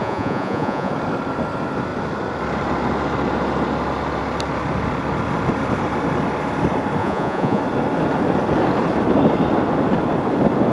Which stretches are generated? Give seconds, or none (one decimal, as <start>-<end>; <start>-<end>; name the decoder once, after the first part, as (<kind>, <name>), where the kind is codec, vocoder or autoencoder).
0.0-0.9 (vocoder, Vocos); 7.0-7.6